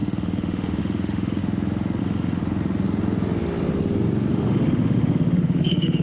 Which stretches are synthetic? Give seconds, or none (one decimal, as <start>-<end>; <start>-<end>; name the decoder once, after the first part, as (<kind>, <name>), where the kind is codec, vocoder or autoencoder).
0.0-1.4 (autoencoder, DAC-VAE); 2.0-2.4; 4.3-6.0